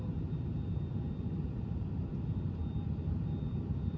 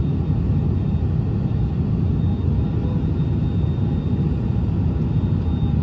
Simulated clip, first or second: first